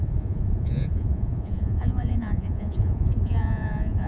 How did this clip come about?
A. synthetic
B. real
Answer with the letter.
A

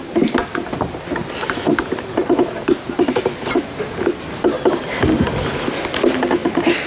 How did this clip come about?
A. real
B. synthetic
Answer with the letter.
A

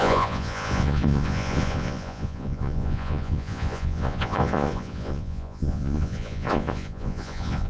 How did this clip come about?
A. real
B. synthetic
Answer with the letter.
B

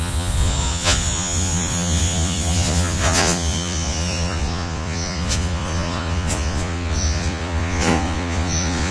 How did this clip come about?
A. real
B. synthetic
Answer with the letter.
B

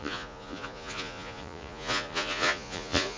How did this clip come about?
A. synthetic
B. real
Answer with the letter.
A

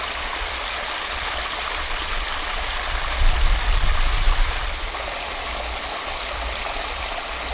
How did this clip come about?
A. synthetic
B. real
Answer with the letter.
B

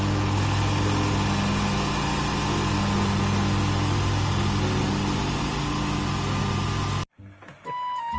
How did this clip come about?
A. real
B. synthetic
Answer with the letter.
A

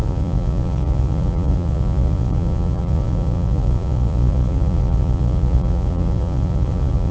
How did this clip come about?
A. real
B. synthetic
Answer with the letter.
B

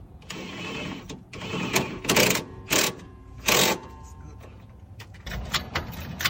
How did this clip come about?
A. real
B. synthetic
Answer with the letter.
B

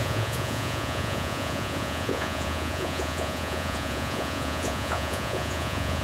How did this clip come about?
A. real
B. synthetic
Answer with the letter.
B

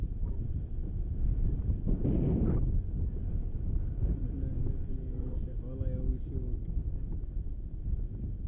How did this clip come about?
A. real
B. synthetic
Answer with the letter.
A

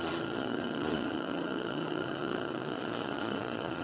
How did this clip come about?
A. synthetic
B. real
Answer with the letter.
A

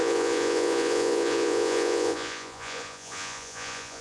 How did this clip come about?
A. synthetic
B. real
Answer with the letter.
A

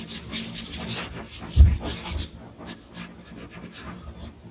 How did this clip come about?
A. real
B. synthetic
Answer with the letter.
A